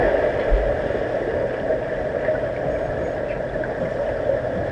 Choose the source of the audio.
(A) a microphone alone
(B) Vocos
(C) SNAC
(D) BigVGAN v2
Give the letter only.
A